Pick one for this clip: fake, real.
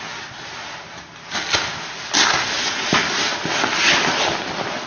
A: real